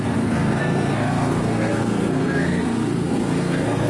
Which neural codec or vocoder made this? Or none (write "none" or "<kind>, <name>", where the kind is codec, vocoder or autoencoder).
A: codec, SNAC